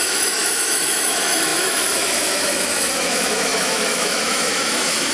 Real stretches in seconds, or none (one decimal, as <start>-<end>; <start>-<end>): none